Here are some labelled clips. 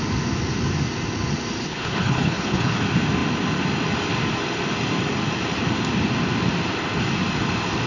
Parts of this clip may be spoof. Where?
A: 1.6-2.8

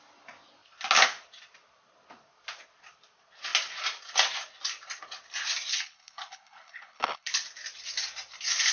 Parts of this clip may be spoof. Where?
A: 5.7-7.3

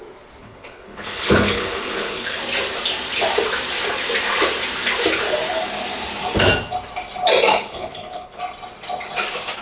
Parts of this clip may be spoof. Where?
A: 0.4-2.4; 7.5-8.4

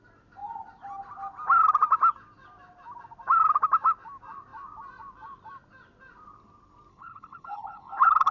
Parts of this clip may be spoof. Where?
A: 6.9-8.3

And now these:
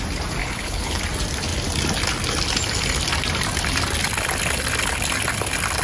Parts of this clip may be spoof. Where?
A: 0.4-1.0

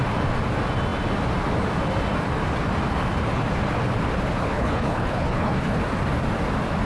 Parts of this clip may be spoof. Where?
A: 4.4-5.8

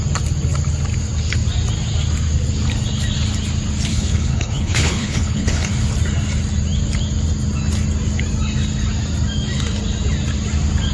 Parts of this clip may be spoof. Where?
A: 3.9-5.7

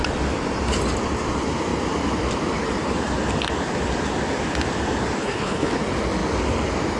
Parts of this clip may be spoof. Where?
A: 5.2-5.8